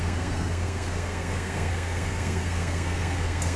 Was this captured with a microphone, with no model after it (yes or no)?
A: no